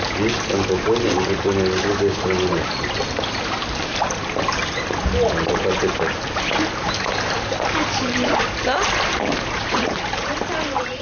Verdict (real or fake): real